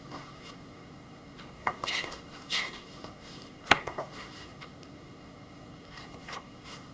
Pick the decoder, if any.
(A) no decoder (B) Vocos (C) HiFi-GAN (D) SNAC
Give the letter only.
D